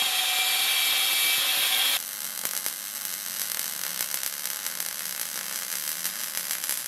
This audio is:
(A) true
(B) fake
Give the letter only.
A